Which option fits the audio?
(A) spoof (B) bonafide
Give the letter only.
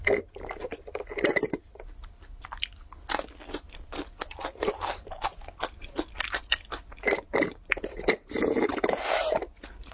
B